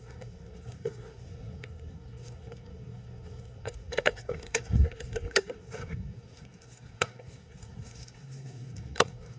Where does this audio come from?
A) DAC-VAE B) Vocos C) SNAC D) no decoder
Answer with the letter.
C